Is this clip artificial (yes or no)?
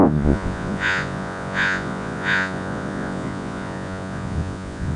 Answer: yes